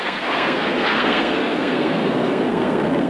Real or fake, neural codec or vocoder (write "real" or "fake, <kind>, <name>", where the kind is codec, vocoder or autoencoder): fake, codec, SNAC